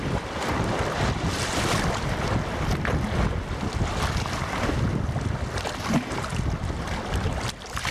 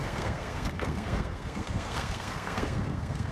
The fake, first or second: second